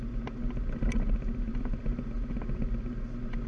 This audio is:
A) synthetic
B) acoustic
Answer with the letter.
B